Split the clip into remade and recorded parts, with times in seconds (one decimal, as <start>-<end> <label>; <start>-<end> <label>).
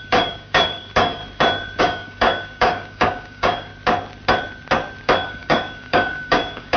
0.0-1.2 remade; 1.2-1.8 recorded; 1.8-3.7 remade; 3.7-5.0 recorded; 5.0-6.8 remade